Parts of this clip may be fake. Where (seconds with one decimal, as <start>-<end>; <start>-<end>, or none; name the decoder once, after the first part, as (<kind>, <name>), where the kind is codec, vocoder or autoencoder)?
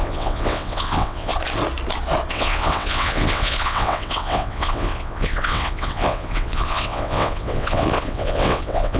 0.0-1.3 (vocoder, WaveNeXt); 2.3-9.0